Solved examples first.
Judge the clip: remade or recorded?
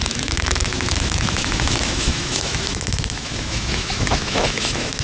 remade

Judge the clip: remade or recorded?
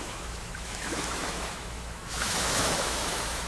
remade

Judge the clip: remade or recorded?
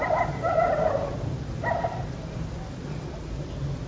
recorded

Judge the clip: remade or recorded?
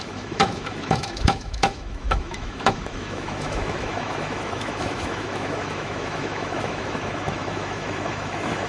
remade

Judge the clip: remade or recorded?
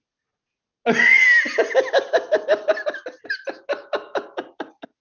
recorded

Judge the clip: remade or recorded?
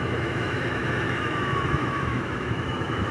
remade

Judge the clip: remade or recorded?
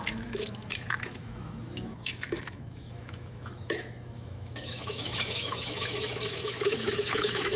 remade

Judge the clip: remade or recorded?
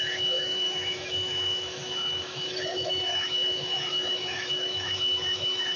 remade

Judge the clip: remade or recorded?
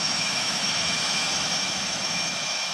remade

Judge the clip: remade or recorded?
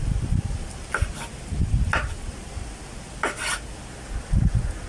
recorded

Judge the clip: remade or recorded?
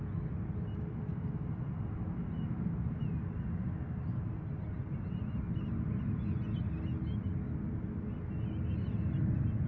recorded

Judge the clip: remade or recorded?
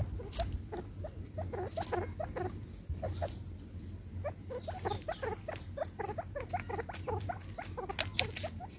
recorded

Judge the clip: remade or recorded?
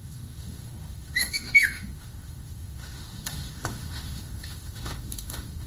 remade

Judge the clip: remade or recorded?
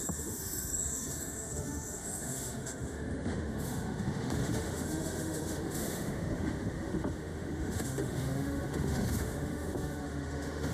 remade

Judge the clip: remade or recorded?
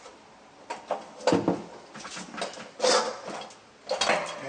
recorded